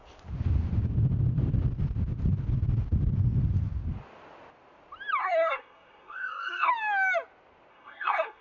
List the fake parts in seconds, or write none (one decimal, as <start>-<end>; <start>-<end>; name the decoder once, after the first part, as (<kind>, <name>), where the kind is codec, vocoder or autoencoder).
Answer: 5.2-6.7 (codec, SNAC); 7.7-8.4

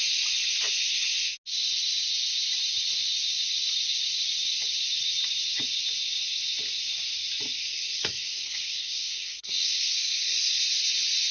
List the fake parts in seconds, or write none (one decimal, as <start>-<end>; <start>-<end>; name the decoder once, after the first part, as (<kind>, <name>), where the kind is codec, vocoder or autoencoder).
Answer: 7.6-10.6 (codec, SNAC)

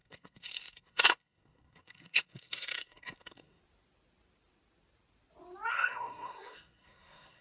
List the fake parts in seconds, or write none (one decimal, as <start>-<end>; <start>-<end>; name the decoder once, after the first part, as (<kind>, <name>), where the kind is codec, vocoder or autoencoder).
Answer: 0.0-3.6 (codec, SNAC); 5.7-7.4

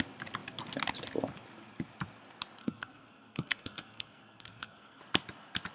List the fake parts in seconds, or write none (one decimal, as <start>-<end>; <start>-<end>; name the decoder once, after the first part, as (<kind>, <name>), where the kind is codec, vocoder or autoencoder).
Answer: 2.6-5.0 (codec, SNAC)

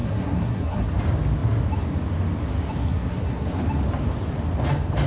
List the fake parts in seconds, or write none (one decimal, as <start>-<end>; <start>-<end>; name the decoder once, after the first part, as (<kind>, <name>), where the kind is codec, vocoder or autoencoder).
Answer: 0.0-0.9 (codec, SNAC); 2.8-3.6

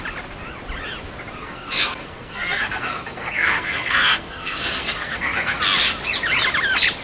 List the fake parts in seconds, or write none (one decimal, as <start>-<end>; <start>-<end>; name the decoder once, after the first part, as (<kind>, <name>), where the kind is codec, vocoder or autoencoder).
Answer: 1.4-5.6 (codec, SNAC)

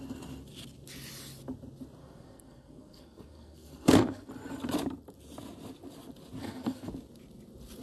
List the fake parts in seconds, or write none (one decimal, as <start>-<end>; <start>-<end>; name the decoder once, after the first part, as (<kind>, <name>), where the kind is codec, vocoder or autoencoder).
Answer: 2.0-4.3 (codec, SNAC); 6.4-6.9